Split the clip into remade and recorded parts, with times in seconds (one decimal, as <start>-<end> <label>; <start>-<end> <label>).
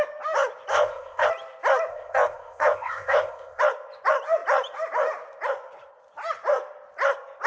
0.0-0.7 recorded; 0.7-1.3 remade; 1.3-1.9 recorded; 1.9-3.6 remade; 3.6-7.5 recorded